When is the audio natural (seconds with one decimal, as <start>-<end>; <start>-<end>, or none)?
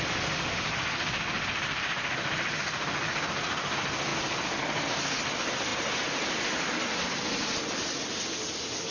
0.0-8.9